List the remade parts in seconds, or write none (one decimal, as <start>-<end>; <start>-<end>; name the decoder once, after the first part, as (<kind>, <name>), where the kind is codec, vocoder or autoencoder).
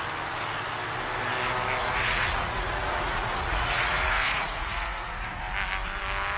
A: 1.8-5.4 (vocoder, Vocos)